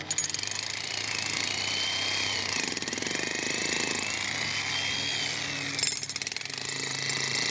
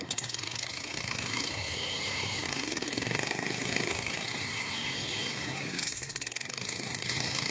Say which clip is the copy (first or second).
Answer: second